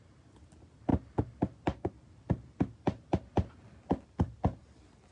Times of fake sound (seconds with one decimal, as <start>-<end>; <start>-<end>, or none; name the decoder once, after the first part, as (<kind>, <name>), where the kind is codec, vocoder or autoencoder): none